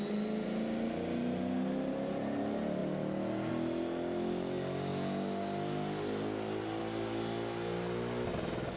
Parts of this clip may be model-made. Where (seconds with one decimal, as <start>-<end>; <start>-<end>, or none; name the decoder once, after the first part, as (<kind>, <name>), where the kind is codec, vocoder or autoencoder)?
none